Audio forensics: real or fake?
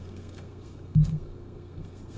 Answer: fake